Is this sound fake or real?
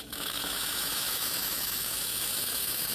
fake